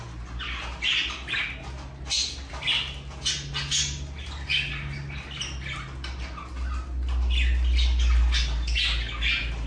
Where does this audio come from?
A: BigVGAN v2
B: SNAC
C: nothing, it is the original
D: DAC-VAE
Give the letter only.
C